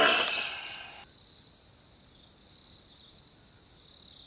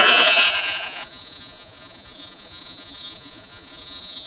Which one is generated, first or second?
second